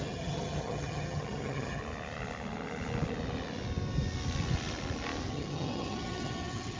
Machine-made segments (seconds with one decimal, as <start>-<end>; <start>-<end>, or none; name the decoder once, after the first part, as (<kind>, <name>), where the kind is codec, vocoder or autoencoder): 0.0-1.8 (vocoder, HiFi-GAN); 5.3-6.8